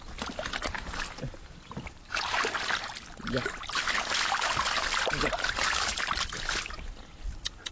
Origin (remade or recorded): recorded